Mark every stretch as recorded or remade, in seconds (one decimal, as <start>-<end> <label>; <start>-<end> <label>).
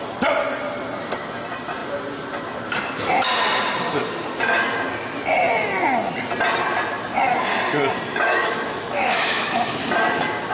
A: 0.0-8.1 recorded; 8.1-9.8 remade; 9.8-10.5 recorded